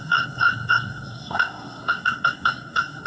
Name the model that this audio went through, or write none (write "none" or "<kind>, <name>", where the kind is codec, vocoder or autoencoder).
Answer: codec, SNAC